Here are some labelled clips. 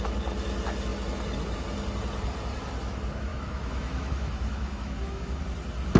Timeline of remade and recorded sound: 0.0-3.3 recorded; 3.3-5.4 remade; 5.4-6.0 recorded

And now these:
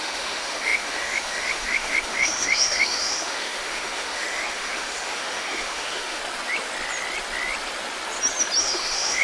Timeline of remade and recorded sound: 0.0-6.2 remade; 6.2-8.6 recorded; 8.6-9.2 remade

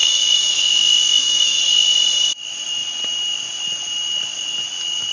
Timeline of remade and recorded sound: 0.0-1.6 remade; 1.6-5.1 recorded